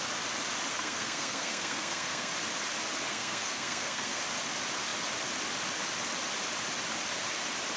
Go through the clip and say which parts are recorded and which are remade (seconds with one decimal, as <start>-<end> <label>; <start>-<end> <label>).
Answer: 0.0-0.7 recorded; 0.7-2.3 remade; 2.3-3.1 recorded; 3.1-4.2 remade; 4.2-7.8 recorded